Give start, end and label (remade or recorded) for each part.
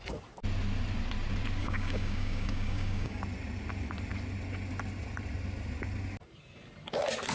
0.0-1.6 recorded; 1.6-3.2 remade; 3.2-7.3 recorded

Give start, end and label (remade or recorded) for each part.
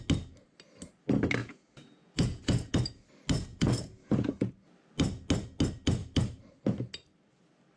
0.0-1.4 recorded; 1.4-2.7 remade; 2.7-3.5 recorded; 3.5-4.5 remade; 4.5-7.8 recorded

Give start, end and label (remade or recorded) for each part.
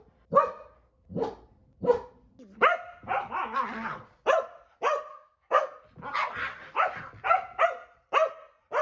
0.0-5.1 recorded; 5.1-5.7 remade; 5.7-8.8 recorded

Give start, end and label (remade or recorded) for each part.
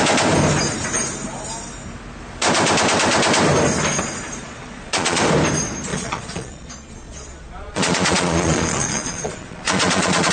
0.0-4.4 recorded; 4.4-5.2 remade; 5.2-5.9 recorded; 5.9-10.3 remade